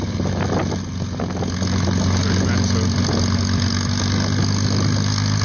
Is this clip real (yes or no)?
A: yes